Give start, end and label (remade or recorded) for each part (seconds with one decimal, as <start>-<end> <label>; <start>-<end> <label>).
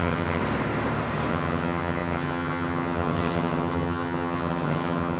0.0-0.4 remade; 0.4-1.3 recorded; 1.3-5.2 remade